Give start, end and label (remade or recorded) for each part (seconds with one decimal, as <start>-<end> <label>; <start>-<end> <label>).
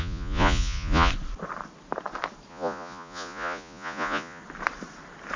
0.0-1.1 remade; 1.1-2.5 recorded; 2.5-4.4 remade; 4.4-5.4 recorded